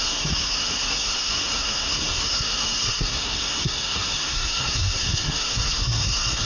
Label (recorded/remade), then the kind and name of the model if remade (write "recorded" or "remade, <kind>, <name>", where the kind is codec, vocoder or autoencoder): remade, codec, SNAC